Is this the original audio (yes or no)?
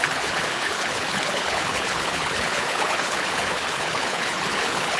no